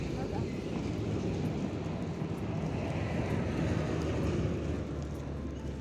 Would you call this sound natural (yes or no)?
yes